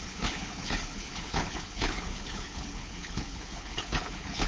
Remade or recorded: remade